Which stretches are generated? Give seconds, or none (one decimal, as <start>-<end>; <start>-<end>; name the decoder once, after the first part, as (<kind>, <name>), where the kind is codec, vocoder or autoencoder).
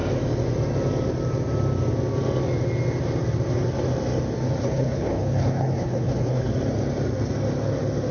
4.6-6.5 (codec, HILCodec)